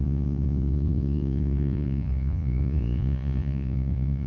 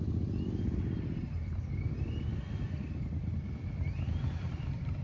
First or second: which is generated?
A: first